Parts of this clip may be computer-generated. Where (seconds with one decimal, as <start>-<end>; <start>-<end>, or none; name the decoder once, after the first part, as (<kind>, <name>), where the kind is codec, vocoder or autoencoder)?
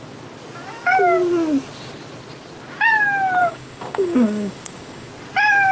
3.4-5.1 (codec, DAC)